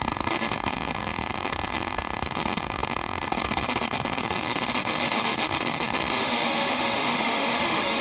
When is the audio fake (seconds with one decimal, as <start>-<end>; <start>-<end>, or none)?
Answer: 0.0-8.0